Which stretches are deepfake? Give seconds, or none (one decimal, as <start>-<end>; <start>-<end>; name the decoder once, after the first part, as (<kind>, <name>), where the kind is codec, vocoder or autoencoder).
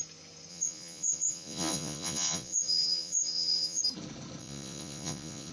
0.5-3.8 (vocoder, Vocos); 4.4-5.5